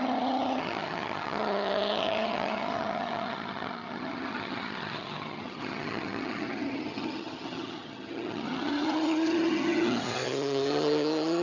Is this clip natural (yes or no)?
no